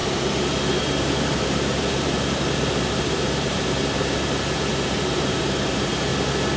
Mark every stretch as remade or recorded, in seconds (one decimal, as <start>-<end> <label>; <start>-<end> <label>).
0.0-0.8 recorded; 0.8-6.1 remade; 6.1-6.6 recorded

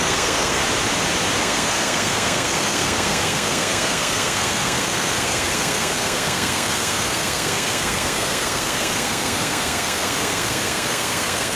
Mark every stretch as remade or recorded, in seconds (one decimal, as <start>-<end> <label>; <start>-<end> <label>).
0.0-0.6 remade; 0.6-1.4 recorded; 1.4-11.6 remade